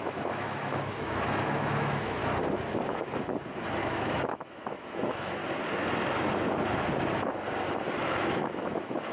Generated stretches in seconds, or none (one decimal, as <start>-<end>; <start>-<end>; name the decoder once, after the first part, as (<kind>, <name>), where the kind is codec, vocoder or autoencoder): 0.0-2.2 (autoencoder, DAC-VAE); 3.8-5.4; 8.0-9.1

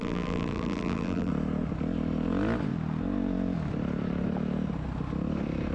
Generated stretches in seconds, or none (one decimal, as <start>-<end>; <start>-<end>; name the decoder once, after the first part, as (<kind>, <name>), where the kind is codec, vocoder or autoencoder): 0.0-1.3 (vocoder, BigVGAN v2)

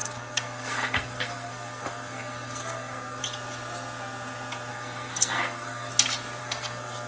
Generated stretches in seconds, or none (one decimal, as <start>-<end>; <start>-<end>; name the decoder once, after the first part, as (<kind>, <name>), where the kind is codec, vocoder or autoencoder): 0.0-3.2 (codec, SNAC); 4.7-5.9; 6.4-7.1

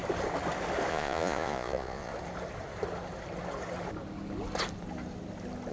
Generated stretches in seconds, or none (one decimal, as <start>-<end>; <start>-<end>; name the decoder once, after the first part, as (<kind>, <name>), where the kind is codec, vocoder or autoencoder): 0.9-2.1 (vocoder, Vocos)

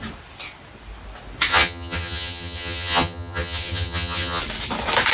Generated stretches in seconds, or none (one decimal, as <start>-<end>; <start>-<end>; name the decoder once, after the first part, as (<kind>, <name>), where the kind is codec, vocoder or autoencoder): 1.5-4.4 (vocoder, HiFi-GAN)

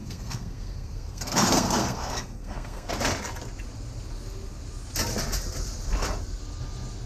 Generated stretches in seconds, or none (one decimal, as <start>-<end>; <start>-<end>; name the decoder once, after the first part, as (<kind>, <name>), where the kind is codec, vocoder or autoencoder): 0.0-2.9 (codec, SNAC)

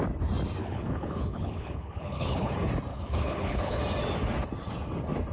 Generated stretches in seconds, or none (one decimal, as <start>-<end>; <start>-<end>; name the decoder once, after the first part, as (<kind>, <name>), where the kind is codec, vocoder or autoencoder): 0.6-2.5 (codec, HILCodec); 2.9-3.8

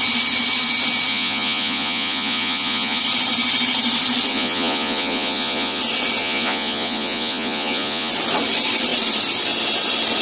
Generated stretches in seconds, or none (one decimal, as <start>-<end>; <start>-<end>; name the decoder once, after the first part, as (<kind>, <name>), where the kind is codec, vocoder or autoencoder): 1.1-3.0 (vocoder, Vocos); 4.3-5.8; 6.2-8.1